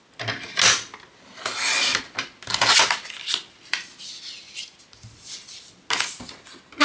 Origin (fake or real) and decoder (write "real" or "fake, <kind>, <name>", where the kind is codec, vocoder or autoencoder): real